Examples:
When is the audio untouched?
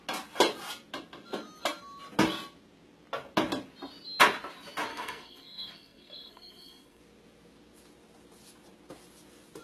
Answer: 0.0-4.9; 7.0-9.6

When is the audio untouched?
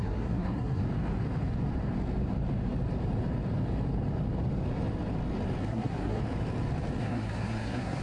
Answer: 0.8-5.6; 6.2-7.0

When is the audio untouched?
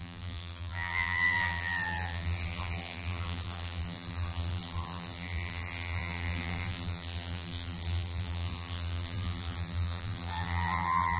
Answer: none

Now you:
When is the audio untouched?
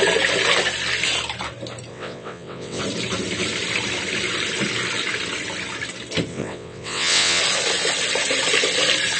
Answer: 0.0-1.9; 2.8-6.3; 7.4-9.2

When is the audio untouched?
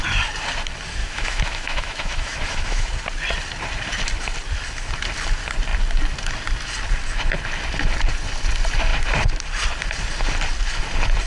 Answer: 0.0-1.0; 2.9-11.3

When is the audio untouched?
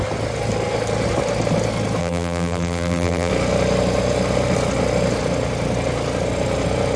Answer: 0.0-2.0; 3.3-7.0